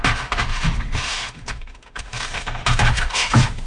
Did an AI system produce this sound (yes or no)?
yes